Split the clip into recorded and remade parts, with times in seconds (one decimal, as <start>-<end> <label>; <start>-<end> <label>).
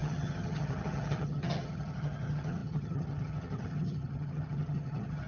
0.0-5.3 remade